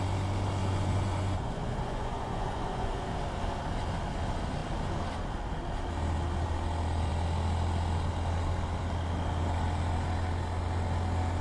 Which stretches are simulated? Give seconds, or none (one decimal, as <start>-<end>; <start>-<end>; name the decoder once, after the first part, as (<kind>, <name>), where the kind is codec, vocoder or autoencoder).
0.6-3.0 (vocoder, Vocos)